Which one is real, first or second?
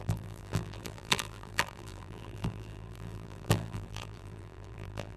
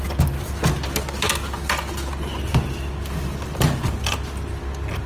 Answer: second